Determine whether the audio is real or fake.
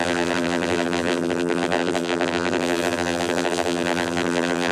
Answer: fake